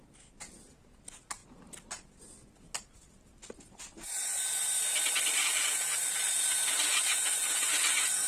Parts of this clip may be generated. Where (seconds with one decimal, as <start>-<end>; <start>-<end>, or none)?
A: 0.0-1.4; 5.7-8.3